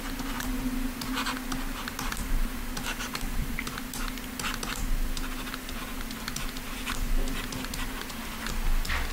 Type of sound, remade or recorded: recorded